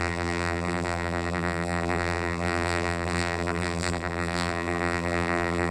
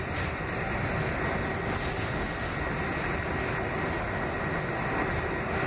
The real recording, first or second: second